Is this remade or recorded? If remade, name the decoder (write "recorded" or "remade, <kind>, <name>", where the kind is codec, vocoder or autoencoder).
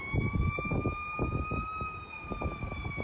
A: recorded